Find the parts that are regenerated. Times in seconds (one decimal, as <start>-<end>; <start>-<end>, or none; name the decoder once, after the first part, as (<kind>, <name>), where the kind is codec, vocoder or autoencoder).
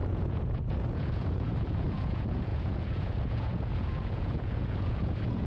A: 0.0-5.5 (vocoder, Vocos)